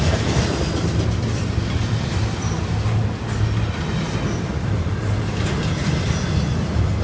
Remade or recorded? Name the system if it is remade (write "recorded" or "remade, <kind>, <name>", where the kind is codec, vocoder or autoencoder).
recorded